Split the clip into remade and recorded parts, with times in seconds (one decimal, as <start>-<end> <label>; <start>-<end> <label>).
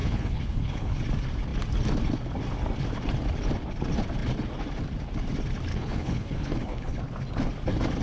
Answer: 0.0-1.0 remade; 1.0-5.7 recorded; 5.7-7.0 remade; 7.0-8.0 recorded